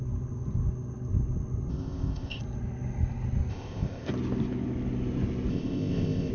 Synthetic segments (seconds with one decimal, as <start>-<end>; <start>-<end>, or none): 1.7-2.4; 3.5-4.1; 5.5-6.3